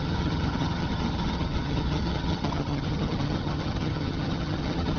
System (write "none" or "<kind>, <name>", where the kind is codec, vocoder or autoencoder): vocoder, HiFi-GAN